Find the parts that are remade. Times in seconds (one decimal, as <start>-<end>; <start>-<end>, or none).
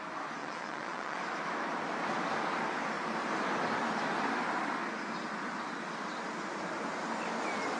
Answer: 0.4-1.2